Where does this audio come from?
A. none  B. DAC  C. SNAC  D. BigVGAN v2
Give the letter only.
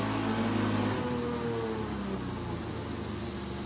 A